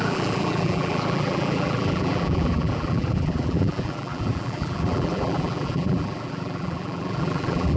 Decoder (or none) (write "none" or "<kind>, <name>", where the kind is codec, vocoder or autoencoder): vocoder, BigVGAN v2